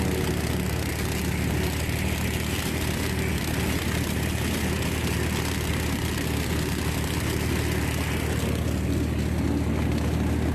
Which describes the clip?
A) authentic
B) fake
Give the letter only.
A